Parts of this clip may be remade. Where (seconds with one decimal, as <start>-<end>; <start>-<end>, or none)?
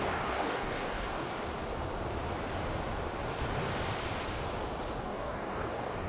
0.0-1.3; 5.0-6.1